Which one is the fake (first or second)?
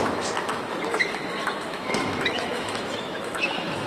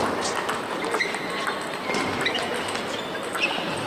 first